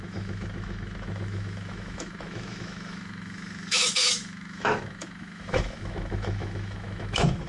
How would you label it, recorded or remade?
remade